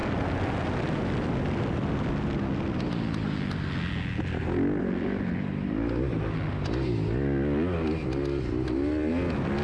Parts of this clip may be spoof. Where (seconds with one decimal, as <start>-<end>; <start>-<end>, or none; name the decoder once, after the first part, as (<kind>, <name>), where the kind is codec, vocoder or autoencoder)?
none